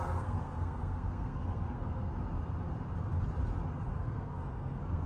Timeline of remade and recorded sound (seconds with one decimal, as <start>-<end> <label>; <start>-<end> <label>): 0.0-2.1 remade; 2.1-3.9 recorded; 3.9-5.1 remade